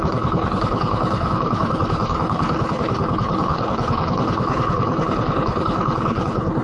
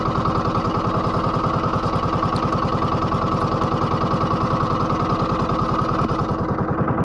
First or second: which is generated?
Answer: first